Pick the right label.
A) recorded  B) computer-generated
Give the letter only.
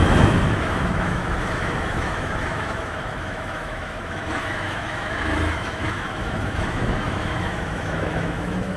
B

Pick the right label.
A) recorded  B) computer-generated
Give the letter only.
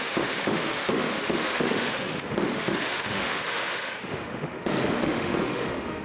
B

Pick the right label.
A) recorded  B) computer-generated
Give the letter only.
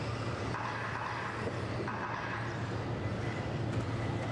A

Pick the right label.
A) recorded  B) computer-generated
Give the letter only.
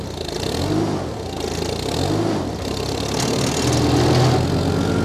A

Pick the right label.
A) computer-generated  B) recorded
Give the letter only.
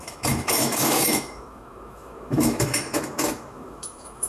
A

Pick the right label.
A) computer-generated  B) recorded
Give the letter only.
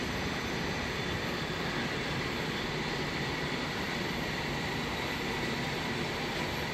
B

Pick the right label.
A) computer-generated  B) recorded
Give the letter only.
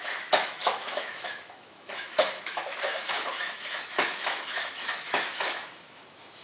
A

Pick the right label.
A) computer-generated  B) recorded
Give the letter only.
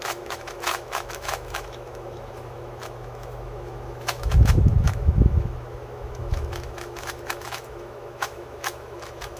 A